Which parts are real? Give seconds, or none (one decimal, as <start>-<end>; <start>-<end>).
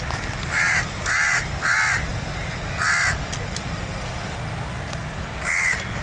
0.0-6.0